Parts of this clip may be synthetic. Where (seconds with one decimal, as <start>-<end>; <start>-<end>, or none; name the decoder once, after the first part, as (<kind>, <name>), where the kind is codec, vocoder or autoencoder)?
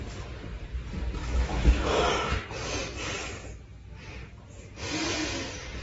1.2-2.1 (autoencoder, DAC-VAE)